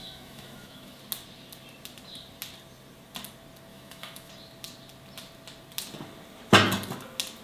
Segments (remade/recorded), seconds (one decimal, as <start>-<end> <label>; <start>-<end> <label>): 0.0-1.0 remade; 1.0-3.7 recorded; 3.7-4.3 remade; 4.3-7.4 recorded